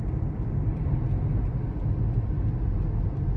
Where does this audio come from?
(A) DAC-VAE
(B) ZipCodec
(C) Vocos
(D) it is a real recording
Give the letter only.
D